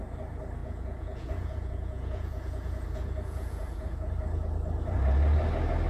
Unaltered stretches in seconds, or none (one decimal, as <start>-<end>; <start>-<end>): 0.0-0.6; 4.1-5.9